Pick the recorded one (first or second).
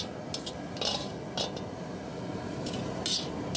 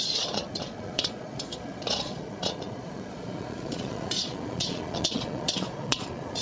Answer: first